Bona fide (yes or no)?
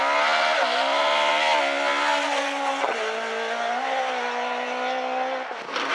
yes